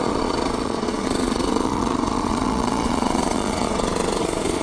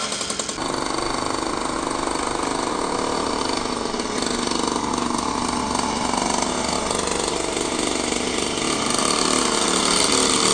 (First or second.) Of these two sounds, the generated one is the first